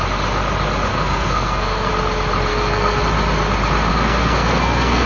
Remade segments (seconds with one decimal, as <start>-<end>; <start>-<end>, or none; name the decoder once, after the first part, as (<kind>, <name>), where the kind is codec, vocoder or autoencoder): 0.9-1.9 (codec, SNAC); 2.5-3.0; 3.9-5.1

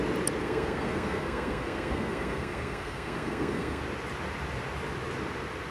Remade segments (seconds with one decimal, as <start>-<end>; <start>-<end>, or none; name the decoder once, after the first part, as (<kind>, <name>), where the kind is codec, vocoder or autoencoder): 0.4-3.8 (codec, SNAC)

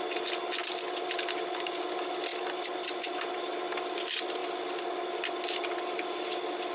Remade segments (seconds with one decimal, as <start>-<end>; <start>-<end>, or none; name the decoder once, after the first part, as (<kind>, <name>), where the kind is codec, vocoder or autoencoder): none